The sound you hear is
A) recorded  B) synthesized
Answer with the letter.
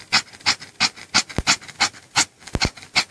A